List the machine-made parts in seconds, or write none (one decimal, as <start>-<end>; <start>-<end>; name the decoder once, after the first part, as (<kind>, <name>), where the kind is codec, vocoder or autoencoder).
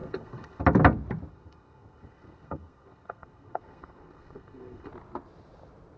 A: 0.0-0.6 (codec, SNAC); 1.3-4.9